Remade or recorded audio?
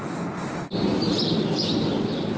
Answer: recorded